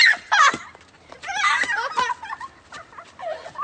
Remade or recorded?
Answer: recorded